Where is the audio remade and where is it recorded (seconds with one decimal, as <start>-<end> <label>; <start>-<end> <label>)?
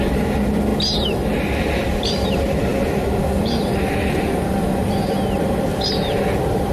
0.0-0.7 remade; 0.7-1.6 recorded; 1.6-6.7 remade